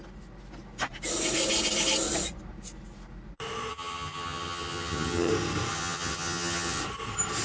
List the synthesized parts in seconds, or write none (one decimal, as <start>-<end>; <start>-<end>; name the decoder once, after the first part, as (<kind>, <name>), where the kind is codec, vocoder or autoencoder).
3.7-5.3 (vocoder, HiFi-GAN); 5.7-6.8